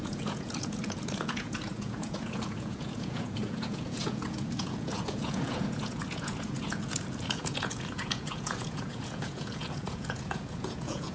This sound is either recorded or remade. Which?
remade